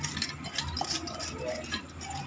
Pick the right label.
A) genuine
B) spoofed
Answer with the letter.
A